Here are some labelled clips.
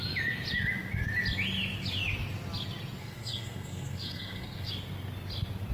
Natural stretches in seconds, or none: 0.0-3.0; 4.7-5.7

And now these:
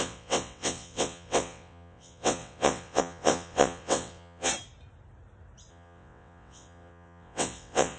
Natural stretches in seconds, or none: 4.5-5.7

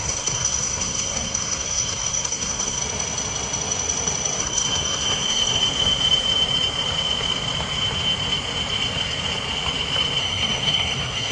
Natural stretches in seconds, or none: 2.8-4.4; 5.6-10.2

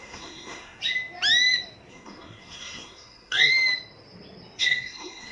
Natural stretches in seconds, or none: 0.8-1.9; 3.5-4.6

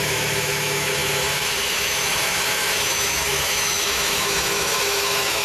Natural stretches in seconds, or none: none